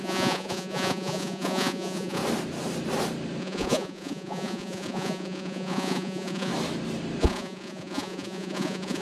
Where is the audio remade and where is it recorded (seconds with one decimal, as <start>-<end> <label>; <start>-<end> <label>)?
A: 0.0-2.2 remade; 2.2-3.4 recorded; 3.4-6.5 remade; 6.5-7.2 recorded; 7.2-9.0 remade